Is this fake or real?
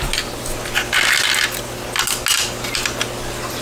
real